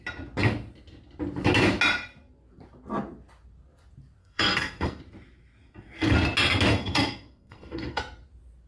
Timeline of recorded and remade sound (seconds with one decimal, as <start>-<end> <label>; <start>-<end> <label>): 0.0-4.2 recorded; 4.2-5.0 remade; 5.0-6.7 recorded; 6.7-8.0 remade; 8.0-8.7 recorded